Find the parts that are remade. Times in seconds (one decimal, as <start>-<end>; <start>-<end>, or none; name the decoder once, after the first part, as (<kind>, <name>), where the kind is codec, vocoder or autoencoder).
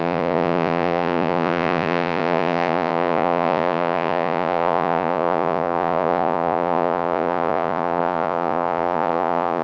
0.0-9.6 (vocoder, Vocos)